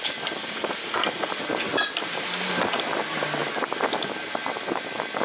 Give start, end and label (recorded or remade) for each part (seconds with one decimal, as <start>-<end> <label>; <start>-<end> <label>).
0.0-5.2 recorded